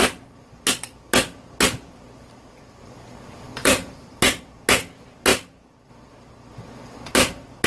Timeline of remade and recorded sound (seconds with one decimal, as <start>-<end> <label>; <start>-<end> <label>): 0.0-3.6 recorded; 3.6-4.2 remade; 4.2-7.7 recorded